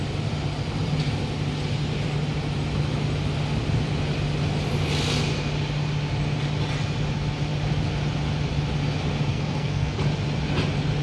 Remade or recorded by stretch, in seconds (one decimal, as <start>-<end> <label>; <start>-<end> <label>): 0.0-9.3 recorded; 9.3-10.0 remade; 10.0-11.0 recorded